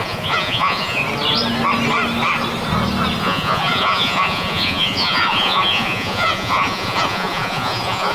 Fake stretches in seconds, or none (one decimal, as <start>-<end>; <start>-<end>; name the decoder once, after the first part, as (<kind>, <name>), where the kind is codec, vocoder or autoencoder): 0.0-1.0 (vocoder, Vocos); 3.2-8.1